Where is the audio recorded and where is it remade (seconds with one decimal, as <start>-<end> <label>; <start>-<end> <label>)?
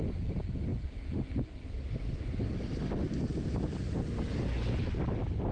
0.0-5.5 recorded